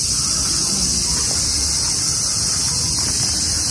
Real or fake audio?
real